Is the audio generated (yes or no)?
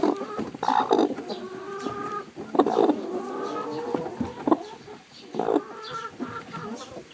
no